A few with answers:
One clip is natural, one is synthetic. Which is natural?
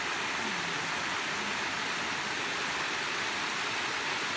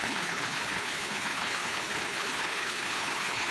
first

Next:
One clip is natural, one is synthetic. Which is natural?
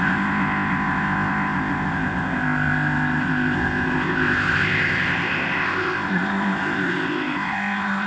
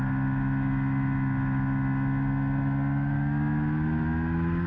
second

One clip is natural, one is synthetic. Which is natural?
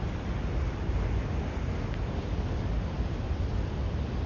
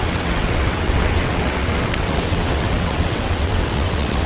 first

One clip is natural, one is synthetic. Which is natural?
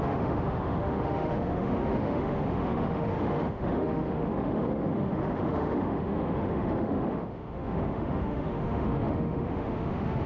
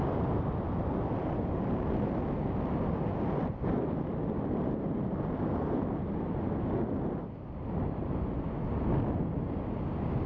second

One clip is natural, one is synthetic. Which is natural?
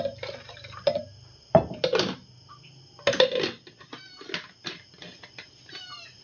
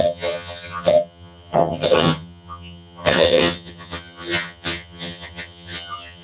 first